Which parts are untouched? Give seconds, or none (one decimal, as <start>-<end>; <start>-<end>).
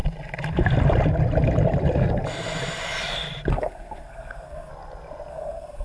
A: 0.0-3.5; 4.7-5.3